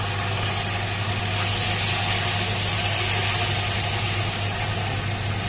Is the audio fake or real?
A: real